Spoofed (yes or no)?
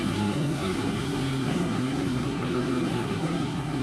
yes